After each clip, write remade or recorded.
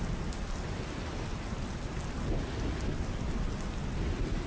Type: recorded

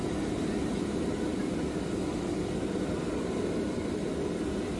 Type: remade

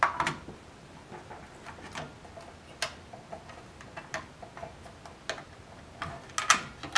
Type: recorded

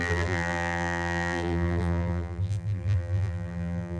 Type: remade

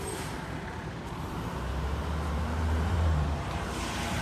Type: remade